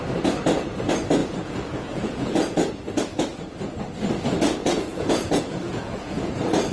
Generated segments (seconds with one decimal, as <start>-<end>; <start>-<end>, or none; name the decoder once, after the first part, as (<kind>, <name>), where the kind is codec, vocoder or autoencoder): 1.2-2.7 (vocoder, Vocos); 4.6-6.3